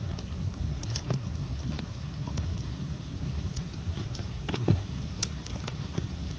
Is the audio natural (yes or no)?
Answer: no